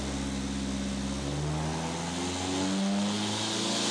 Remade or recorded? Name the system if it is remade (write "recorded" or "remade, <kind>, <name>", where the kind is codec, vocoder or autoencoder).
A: recorded